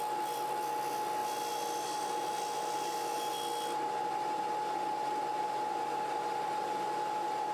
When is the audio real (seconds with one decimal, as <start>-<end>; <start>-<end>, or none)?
0.0-7.5